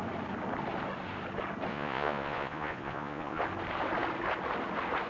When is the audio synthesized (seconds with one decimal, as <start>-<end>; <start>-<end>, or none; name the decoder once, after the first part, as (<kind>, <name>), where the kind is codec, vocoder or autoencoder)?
1.7-3.4 (vocoder, Vocos)